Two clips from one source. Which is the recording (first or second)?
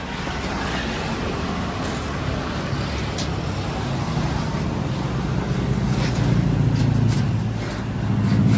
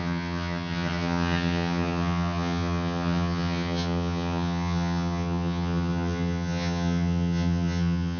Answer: first